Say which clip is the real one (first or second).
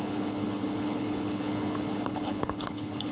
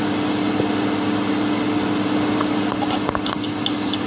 second